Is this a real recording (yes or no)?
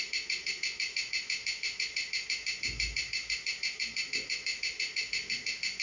no